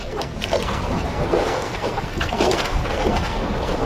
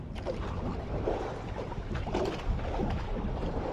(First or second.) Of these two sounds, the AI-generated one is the first